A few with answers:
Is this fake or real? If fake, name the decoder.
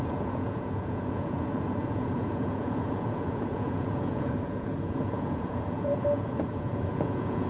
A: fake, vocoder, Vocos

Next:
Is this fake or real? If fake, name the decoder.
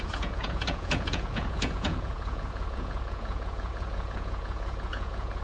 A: fake, vocoder, Vocos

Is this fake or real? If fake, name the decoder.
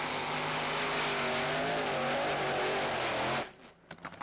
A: real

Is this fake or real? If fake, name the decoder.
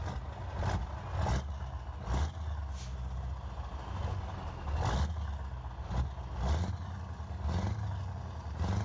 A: real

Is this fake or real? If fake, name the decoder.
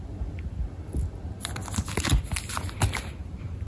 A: real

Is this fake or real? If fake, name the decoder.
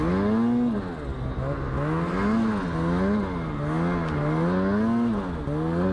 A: real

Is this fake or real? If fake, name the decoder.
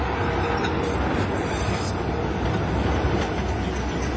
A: real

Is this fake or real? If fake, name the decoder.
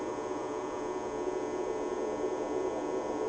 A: fake, vocoder, Vocos